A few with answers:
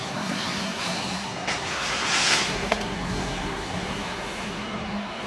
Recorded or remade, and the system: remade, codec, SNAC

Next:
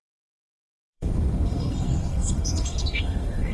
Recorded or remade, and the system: remade, codec, SNAC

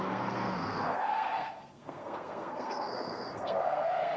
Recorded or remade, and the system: remade, codec, SNAC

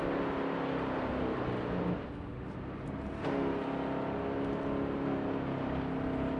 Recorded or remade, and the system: recorded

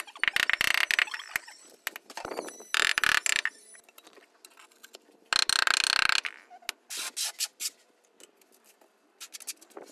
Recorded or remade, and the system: recorded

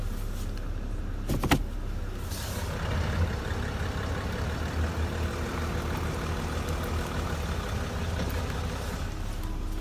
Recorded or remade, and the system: recorded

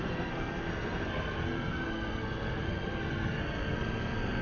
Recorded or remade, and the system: remade, codec, SNAC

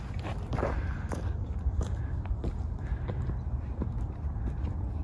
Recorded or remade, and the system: recorded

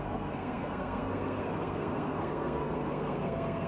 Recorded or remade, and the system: remade, codec, SNAC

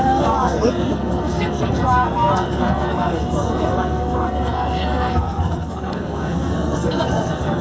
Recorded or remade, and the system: remade, codec, SNAC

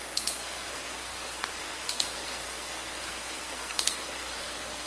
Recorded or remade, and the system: remade, codec, SNAC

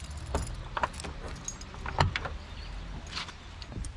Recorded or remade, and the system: recorded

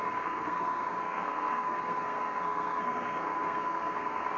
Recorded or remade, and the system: remade, codec, SNAC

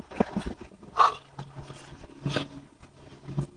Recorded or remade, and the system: recorded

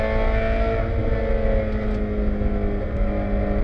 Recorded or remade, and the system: recorded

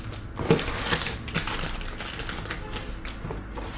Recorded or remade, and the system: recorded